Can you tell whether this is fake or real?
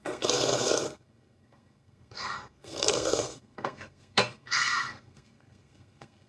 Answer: fake